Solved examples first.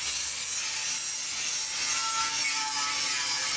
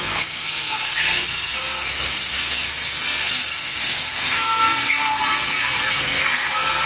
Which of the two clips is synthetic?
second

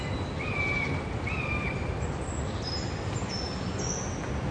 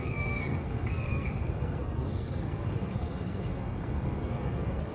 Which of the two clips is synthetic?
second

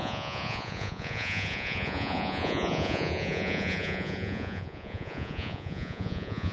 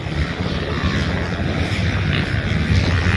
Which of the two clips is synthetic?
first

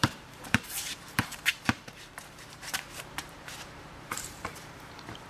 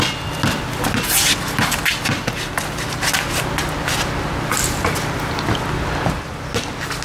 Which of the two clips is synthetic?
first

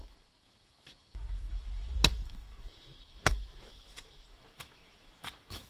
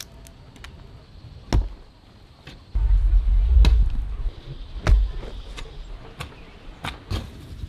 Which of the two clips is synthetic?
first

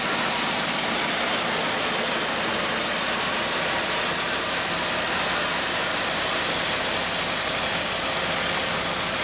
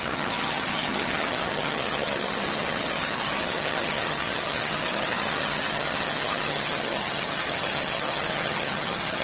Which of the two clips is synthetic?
second